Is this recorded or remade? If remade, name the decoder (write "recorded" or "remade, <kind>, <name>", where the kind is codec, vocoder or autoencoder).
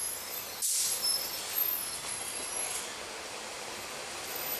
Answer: recorded